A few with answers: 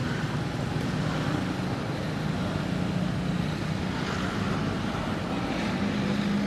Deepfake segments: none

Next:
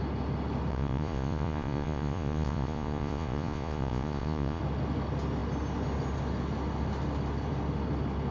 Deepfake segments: 0.7-4.6 (vocoder, Vocos)

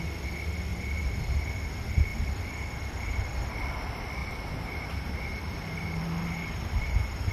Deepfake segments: 0.7-1.5 (vocoder, BigVGAN v2); 4.2-7.3

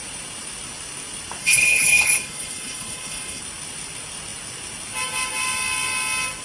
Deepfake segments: 1.4-3.4 (codec, HILCodec)

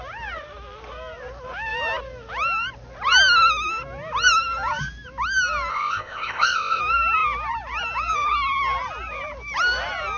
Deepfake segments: 5.7-6.8 (codec, ZipCodec)